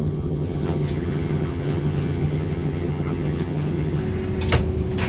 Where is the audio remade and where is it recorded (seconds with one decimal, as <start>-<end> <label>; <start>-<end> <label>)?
0.0-4.0 remade; 4.0-5.1 recorded